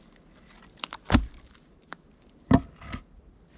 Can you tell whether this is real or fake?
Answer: real